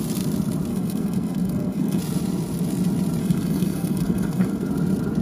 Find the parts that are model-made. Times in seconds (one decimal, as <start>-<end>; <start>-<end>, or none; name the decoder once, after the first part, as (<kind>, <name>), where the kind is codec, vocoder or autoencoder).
0.7-2.0 (codec, SNAC); 3.2-4.7